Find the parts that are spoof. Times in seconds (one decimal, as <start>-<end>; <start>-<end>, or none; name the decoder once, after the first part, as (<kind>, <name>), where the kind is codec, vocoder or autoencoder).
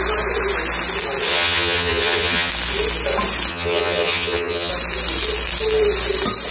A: 1.3-2.5 (vocoder, HiFi-GAN); 3.5-4.7